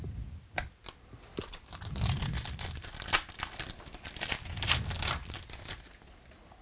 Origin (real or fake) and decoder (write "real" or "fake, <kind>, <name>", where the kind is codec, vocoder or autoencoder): real